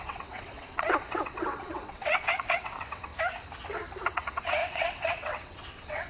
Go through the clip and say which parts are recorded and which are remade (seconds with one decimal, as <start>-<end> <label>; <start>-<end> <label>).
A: 0.0-3.1 remade; 3.1-4.1 recorded; 4.1-6.1 remade